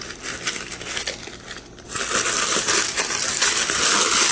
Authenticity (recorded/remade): recorded